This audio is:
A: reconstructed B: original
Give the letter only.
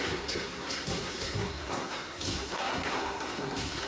A